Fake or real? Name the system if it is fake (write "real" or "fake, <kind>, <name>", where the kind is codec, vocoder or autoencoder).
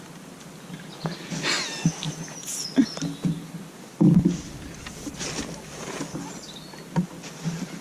real